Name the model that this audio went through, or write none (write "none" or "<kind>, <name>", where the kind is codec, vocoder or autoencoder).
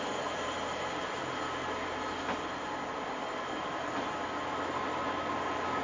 none